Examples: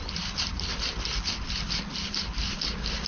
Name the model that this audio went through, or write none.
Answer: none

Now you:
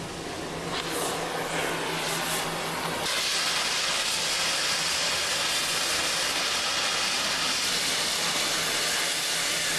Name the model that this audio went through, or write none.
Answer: none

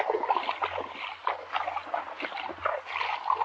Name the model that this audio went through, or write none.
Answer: none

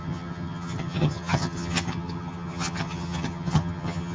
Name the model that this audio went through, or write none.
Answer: vocoder, HiFi-GAN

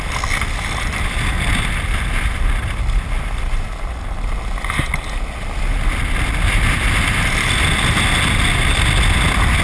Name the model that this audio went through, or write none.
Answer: none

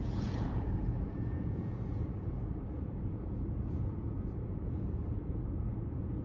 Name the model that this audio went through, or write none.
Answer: vocoder, Vocos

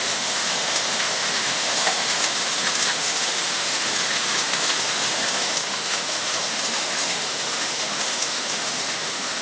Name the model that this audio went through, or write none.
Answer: autoencoder, DAC-VAE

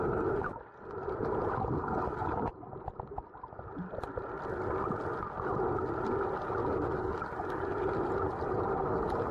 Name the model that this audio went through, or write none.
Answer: none